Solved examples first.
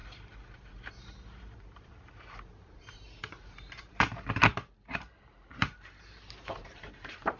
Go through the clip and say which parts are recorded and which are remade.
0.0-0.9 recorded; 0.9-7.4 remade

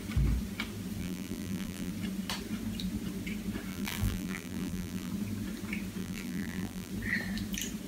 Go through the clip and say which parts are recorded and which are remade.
0.0-1.0 recorded; 1.0-1.9 remade; 1.9-3.7 recorded; 3.7-5.1 remade; 5.1-6.0 recorded; 6.0-6.9 remade; 6.9-7.9 recorded

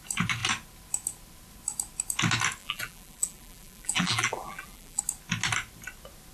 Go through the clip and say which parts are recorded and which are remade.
0.0-2.6 recorded; 2.6-5.0 remade; 5.0-6.3 recorded